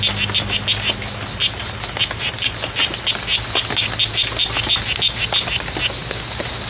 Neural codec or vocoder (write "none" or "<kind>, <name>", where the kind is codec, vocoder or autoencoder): none